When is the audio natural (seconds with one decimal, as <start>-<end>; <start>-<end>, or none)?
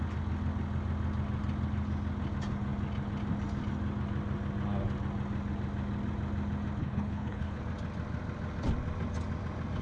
0.0-6.8; 7.6-9.8